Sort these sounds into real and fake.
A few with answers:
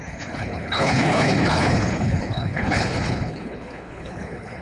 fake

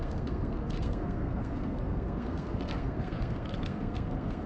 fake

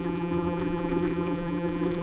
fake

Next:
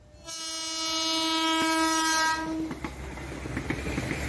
real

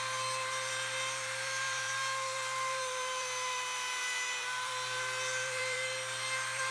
fake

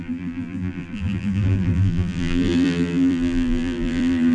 fake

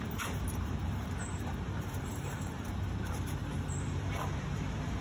fake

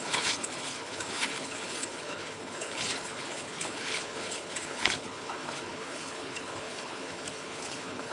fake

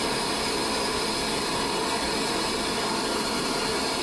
real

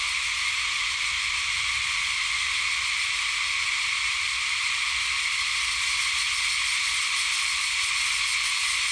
real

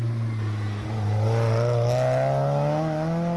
real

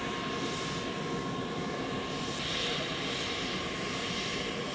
real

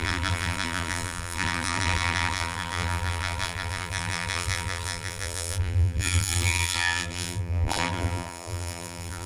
fake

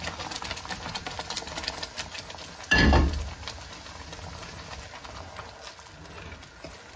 real